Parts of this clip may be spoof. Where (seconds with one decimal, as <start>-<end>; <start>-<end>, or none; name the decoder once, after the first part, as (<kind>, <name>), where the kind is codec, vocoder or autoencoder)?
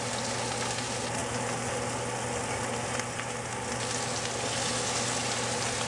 none